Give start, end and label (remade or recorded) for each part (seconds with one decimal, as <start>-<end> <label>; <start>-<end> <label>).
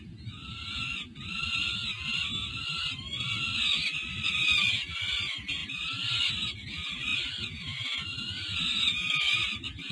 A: 0.0-9.9 recorded